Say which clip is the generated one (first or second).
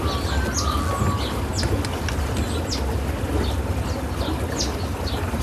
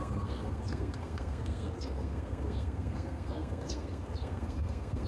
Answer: second